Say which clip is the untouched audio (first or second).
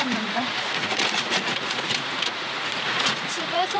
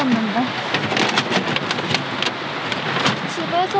second